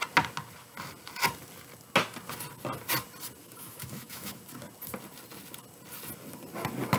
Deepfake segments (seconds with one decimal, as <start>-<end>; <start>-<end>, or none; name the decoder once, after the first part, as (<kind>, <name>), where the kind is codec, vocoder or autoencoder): 3.4-4.4 (autoencoder, DAC-VAE)